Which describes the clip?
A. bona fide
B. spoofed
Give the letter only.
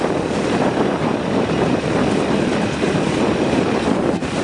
B